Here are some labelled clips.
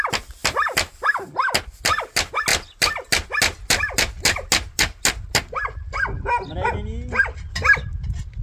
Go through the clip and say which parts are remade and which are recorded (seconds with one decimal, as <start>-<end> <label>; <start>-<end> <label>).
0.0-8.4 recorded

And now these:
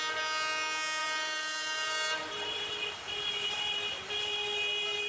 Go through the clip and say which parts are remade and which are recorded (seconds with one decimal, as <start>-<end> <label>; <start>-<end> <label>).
0.0-1.0 recorded; 1.0-4.1 remade; 4.1-5.1 recorded

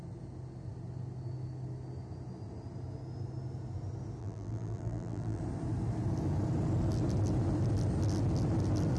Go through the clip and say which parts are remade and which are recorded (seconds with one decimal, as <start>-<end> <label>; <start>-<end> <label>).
0.0-4.2 recorded; 4.2-5.4 remade; 5.4-9.0 recorded

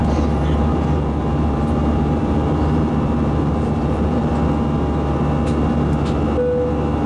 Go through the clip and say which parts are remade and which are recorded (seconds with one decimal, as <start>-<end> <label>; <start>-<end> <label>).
0.0-4.3 remade; 4.3-7.1 recorded